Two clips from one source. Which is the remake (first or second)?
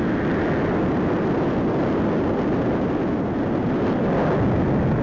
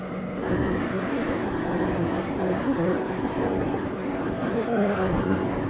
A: second